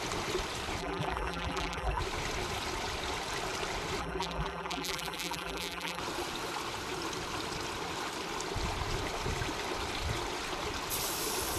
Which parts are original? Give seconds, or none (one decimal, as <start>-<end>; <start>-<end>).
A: 0.0-0.8; 2.0-4.0; 6.0-11.6